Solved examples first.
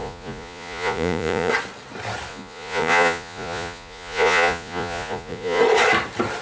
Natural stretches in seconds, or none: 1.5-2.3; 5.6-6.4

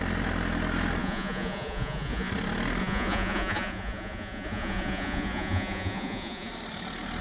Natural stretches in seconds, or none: 0.0-1.0; 2.3-2.8; 6.5-7.2

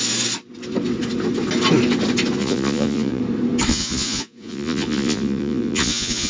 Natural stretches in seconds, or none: 0.0-2.4; 3.2-3.7

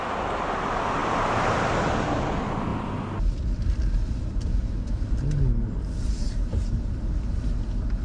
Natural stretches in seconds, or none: 0.0-8.0

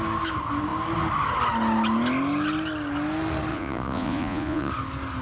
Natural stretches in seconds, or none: 0.0-3.5; 4.7-5.2